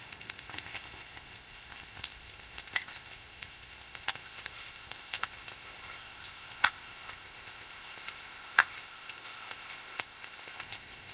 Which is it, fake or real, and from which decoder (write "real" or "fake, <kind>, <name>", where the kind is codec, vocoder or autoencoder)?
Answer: fake, codec, ZipCodec